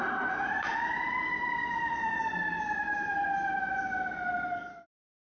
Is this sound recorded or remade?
remade